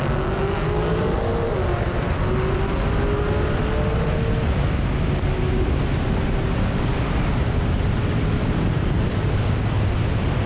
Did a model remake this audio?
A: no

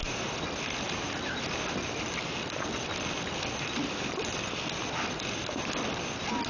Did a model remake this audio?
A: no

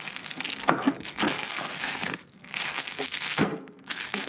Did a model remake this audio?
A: yes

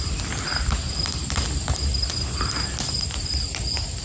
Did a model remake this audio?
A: no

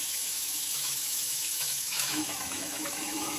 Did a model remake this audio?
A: yes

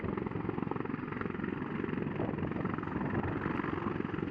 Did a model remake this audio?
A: no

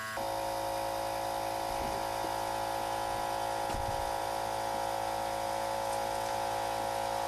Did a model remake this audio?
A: no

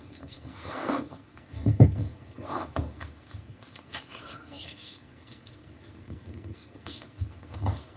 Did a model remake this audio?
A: yes